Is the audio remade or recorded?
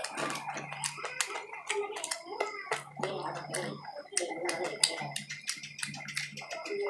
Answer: recorded